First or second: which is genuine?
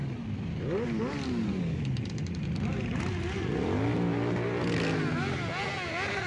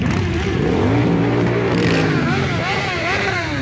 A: first